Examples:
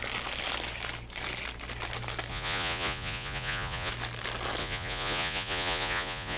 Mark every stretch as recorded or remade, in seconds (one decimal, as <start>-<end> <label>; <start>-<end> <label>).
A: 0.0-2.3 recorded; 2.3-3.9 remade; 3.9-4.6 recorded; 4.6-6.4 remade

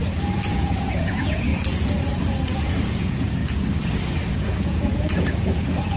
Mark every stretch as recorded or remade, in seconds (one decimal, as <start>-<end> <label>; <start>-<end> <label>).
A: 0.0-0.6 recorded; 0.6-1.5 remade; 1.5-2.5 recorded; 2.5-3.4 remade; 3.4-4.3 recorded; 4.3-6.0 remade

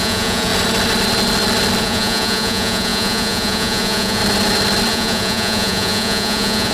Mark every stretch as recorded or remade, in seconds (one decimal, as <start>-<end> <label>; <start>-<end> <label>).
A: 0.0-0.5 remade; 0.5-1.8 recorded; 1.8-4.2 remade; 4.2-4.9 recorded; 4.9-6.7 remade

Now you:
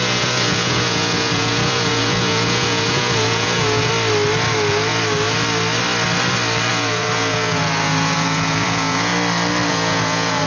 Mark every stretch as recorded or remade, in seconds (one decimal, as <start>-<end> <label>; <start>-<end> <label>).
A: 0.0-3.9 remade; 3.9-6.7 recorded; 6.7-9.1 remade; 9.1-9.7 recorded; 9.7-10.5 remade

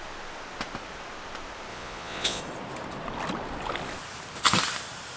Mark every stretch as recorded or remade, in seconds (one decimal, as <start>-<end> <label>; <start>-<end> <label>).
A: 0.0-1.7 recorded; 1.7-2.4 remade; 2.4-5.2 recorded

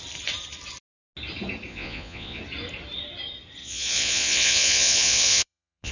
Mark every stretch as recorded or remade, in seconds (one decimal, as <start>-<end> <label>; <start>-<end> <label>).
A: 0.0-1.7 recorded; 1.7-2.4 remade; 2.4-3.6 recorded; 3.6-5.9 remade

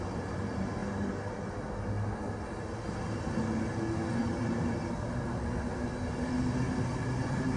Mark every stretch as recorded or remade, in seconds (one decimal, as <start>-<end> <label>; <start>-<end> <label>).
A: 0.0-7.6 recorded